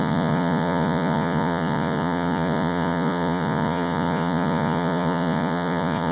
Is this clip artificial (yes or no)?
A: yes